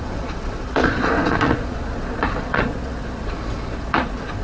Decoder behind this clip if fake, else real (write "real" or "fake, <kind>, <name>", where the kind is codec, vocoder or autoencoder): fake, vocoder, Vocos